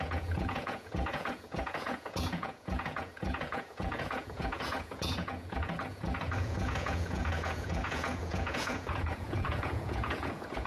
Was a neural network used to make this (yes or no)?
yes